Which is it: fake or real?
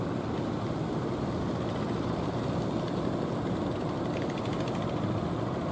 real